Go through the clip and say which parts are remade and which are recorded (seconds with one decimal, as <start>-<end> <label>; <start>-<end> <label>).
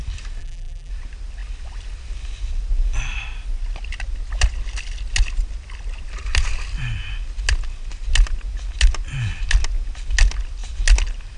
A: 0.0-0.4 recorded; 0.4-0.9 remade; 0.9-11.4 recorded